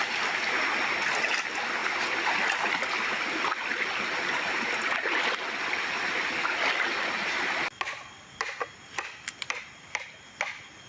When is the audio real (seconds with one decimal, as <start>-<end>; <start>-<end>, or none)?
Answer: 0.0-1.8; 2.7-10.9